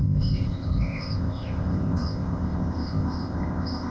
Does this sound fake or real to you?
fake